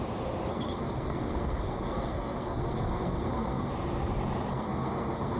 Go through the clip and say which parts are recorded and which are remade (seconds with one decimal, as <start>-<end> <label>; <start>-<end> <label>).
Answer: 0.0-0.5 recorded; 0.5-3.7 remade; 3.7-4.5 recorded; 4.5-5.4 remade